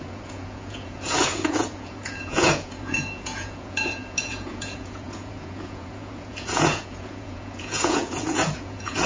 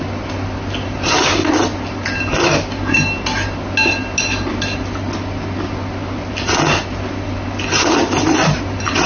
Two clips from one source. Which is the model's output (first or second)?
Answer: first